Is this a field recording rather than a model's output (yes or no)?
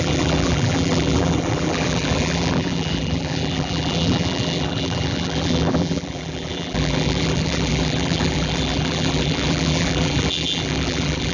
no